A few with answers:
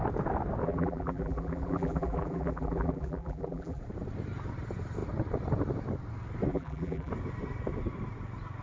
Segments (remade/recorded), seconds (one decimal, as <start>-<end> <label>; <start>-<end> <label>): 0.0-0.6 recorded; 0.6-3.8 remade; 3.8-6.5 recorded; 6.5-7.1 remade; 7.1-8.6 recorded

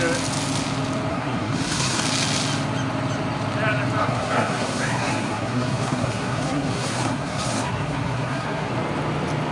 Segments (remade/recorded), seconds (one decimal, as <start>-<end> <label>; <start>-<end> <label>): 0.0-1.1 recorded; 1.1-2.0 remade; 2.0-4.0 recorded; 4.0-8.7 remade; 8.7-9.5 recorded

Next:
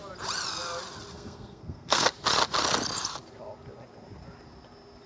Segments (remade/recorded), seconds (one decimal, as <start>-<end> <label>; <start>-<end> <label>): 0.0-1.1 recorded; 1.1-2.1 remade; 2.1-5.1 recorded

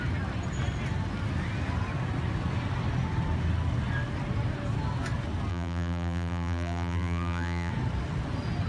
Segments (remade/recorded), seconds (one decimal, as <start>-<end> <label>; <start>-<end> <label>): 0.0-5.5 recorded; 5.5-7.7 remade; 7.7-8.7 recorded

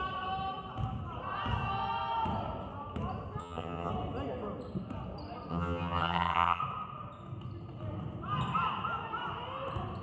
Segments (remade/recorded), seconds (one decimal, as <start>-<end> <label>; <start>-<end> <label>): 0.0-3.4 recorded; 3.4-3.9 remade; 3.9-5.5 recorded; 5.5-6.6 remade; 6.6-10.0 recorded